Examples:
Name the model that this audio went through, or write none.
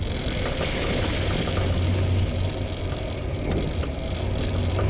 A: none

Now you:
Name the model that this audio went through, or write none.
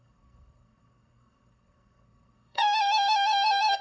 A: codec, SNAC